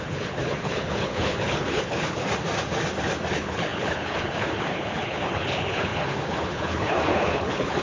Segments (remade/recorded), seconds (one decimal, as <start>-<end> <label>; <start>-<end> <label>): 0.0-2.2 remade; 2.2-3.3 recorded; 3.3-7.8 remade